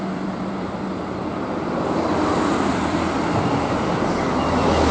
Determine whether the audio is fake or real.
fake